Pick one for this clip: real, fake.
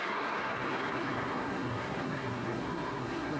fake